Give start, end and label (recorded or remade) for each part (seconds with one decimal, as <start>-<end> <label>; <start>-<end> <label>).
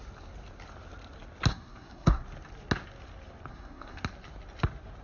0.0-1.5 recorded; 1.5-2.2 remade; 2.2-3.5 recorded; 3.5-4.0 remade; 4.0-5.0 recorded